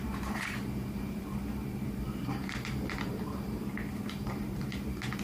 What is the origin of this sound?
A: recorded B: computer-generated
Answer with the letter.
B